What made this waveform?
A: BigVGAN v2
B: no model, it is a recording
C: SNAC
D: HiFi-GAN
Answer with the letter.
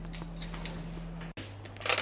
B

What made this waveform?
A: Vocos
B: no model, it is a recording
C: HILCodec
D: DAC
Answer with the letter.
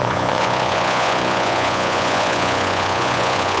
A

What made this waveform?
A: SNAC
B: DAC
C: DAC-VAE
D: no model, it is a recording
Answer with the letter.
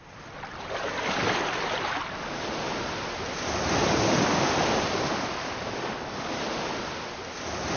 D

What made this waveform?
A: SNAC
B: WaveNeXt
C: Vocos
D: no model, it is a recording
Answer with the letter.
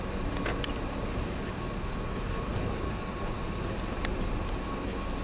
D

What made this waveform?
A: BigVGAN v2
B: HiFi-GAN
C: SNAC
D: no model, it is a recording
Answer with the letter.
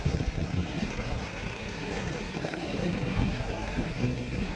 C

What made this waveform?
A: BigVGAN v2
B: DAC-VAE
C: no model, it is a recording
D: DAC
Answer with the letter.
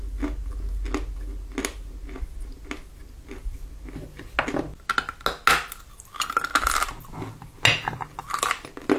C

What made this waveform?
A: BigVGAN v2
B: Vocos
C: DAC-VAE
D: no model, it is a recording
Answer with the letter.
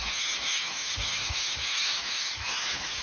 C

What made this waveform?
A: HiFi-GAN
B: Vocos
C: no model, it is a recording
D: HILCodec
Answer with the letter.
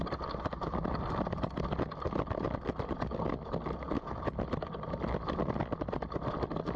C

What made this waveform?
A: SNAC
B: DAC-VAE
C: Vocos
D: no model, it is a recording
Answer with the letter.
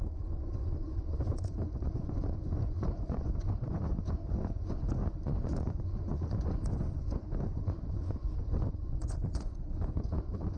C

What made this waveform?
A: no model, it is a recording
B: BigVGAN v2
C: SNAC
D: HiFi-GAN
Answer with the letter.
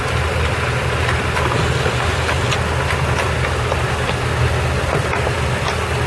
A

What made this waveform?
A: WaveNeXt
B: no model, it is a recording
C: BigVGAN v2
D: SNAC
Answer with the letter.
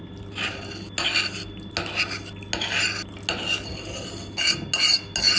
B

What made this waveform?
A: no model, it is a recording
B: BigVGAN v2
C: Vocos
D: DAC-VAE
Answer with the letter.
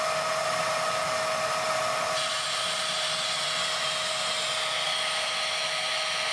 A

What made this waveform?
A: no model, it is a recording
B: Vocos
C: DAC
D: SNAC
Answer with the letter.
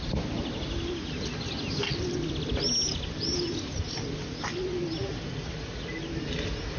A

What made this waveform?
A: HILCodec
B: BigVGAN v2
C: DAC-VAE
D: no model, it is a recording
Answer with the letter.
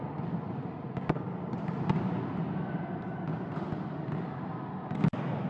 D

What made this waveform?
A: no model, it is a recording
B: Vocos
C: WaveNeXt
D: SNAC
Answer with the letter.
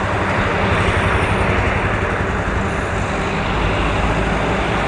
A